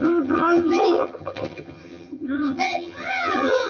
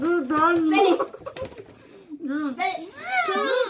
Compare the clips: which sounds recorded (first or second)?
second